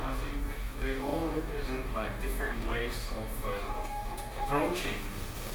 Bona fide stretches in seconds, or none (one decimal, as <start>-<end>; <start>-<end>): none